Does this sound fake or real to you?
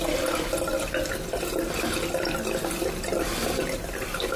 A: real